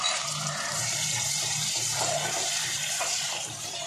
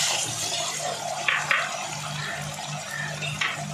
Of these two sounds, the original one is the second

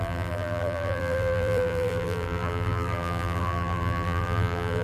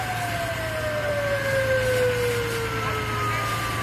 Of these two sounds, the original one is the second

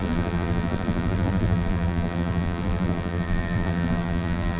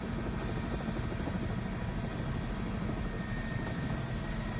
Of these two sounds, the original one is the second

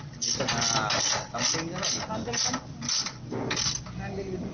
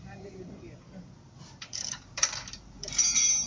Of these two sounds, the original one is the first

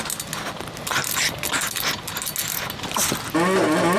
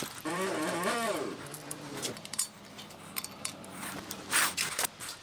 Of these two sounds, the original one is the first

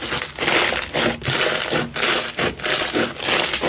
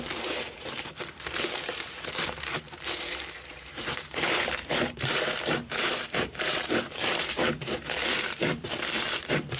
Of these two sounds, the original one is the first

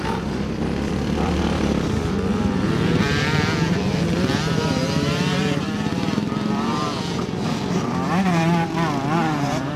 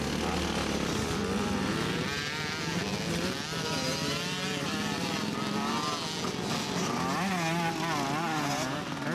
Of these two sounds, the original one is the second